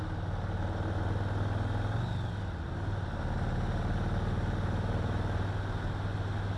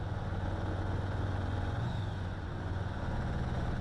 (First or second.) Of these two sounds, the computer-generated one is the second